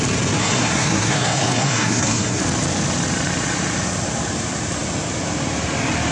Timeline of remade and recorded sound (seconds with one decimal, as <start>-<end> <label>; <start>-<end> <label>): 0.0-0.4 recorded; 0.4-2.4 remade; 2.4-6.1 recorded